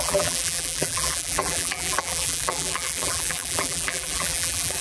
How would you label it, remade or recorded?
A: remade